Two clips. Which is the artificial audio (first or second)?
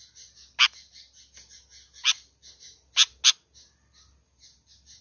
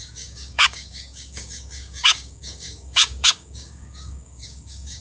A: second